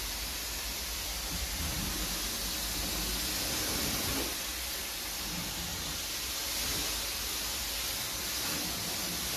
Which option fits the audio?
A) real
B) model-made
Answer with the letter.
A